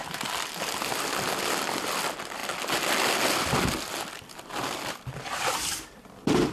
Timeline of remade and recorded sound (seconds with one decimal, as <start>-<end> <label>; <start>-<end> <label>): 0.0-2.4 remade; 2.4-5.0 recorded; 5.0-6.5 remade